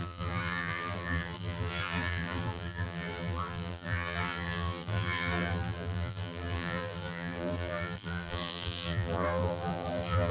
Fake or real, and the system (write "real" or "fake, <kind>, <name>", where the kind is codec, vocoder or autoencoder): fake, vocoder, BigVGAN v2